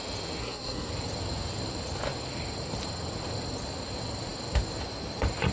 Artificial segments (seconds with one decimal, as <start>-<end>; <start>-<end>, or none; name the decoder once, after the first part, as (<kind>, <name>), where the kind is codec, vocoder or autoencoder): 0.4-0.9 (codec, SNAC)